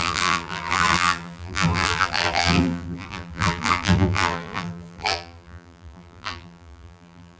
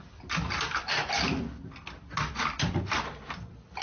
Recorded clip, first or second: second